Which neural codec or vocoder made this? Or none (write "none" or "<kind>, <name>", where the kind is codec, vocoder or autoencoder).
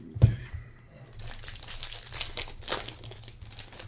none